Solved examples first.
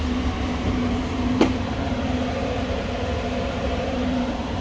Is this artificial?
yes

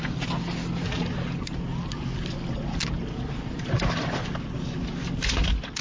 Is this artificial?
no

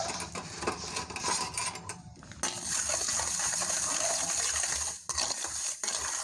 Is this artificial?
no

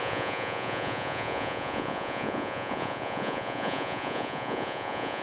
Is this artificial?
yes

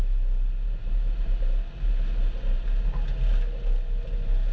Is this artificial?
no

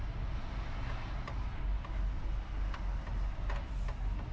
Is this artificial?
no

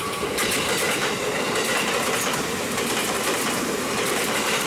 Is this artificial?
yes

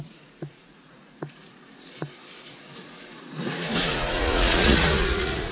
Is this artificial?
yes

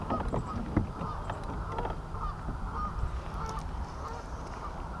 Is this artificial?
no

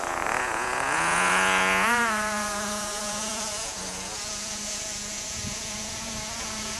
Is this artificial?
yes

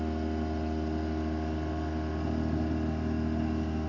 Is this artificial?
no